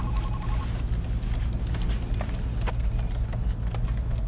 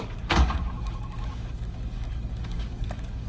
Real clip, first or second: first